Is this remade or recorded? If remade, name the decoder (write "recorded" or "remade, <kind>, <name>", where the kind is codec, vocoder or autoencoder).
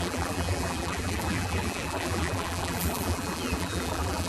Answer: remade, vocoder, BigVGAN v2